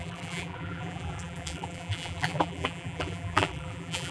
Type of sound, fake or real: fake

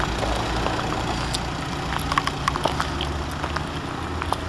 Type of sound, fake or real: real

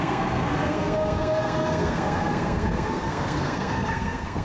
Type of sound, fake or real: fake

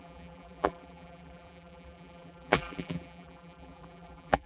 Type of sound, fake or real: fake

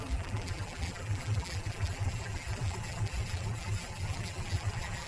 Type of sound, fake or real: fake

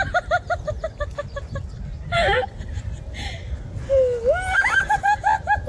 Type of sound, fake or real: real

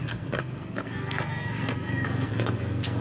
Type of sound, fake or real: fake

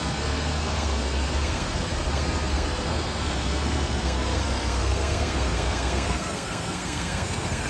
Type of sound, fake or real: fake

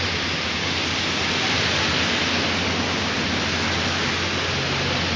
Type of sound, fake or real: real